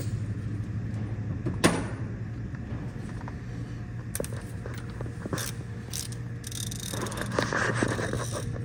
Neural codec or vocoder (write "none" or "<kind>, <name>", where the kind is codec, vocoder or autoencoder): none